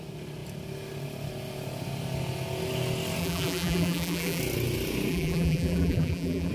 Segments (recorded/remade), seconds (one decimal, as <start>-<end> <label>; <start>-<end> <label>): 0.0-3.2 recorded; 3.2-4.4 remade; 4.4-5.1 recorded; 5.1-6.5 remade